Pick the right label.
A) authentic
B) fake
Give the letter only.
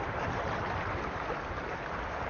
A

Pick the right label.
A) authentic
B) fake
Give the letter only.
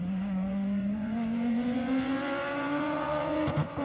B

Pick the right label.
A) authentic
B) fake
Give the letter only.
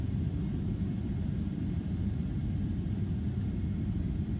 A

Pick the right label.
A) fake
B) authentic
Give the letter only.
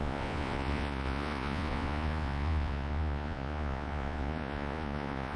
A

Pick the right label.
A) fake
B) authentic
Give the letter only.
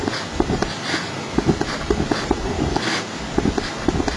B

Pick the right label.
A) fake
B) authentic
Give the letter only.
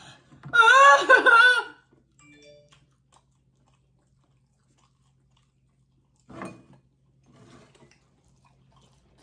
B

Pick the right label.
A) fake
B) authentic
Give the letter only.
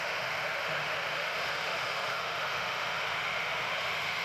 A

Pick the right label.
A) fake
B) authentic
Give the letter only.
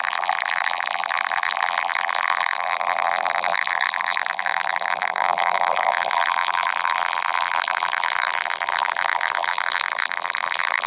A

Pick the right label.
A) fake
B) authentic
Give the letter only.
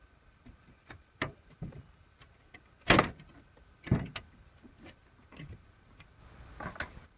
B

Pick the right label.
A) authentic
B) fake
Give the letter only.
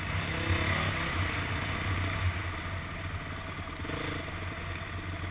A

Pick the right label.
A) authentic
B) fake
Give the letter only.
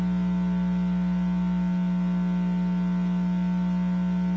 A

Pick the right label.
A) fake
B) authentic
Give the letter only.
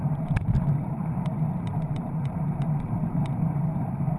A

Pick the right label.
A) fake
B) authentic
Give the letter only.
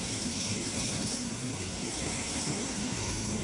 A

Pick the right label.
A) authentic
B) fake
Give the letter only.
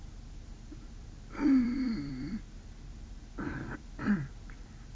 B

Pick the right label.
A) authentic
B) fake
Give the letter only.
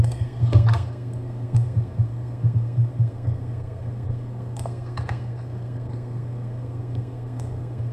B